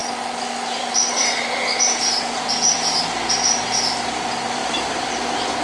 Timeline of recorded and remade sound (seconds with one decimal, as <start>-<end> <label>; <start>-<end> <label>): 0.0-4.6 recorded; 4.6-5.1 remade; 5.1-5.6 recorded